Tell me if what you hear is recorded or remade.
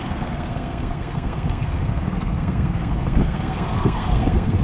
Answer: remade